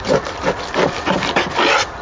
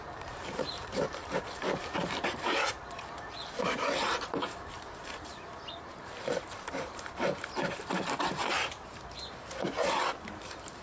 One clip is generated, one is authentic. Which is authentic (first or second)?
first